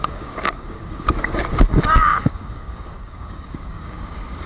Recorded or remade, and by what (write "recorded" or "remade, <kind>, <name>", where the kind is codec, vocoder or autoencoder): remade, codec, DAC